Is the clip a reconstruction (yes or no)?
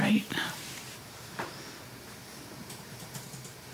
yes